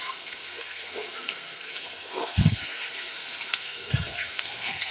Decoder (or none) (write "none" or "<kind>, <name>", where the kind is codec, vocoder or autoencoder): codec, SNAC